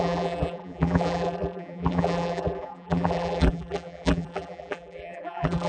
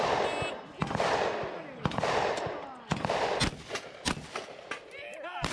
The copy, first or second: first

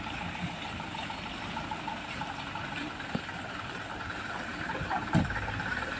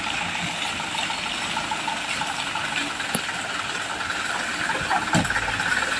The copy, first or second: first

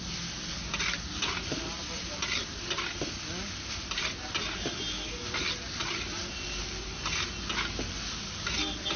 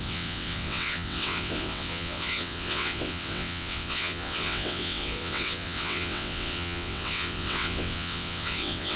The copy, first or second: second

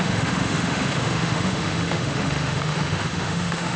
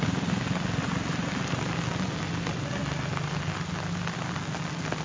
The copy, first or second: first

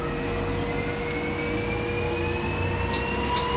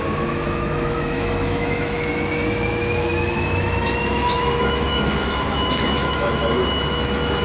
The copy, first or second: second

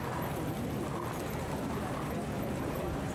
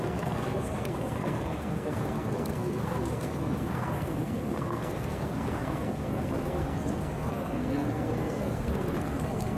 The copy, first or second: second